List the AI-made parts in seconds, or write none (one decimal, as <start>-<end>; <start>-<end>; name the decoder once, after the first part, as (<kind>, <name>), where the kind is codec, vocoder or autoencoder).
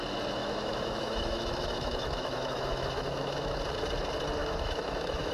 0.4-3.6 (autoencoder, DAC-VAE); 4.4-5.3